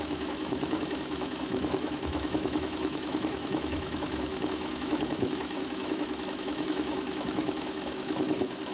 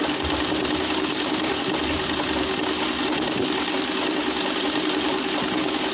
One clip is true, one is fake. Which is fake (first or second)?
first